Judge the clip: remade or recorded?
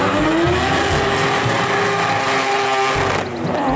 recorded